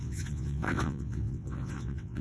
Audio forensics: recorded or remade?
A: remade